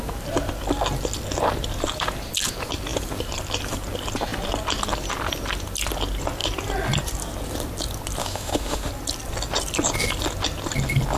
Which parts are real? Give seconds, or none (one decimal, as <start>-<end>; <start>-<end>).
0.0-8.2; 8.9-11.2